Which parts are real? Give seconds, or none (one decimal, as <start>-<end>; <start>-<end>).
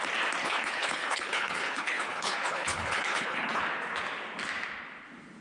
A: 0.0-0.4; 3.6-5.4